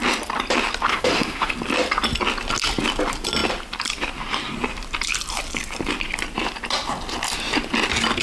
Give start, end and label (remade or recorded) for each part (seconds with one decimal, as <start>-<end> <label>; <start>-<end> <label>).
0.0-0.9 recorded; 0.9-1.5 remade; 1.5-8.2 recorded